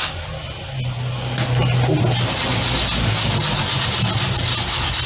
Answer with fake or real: real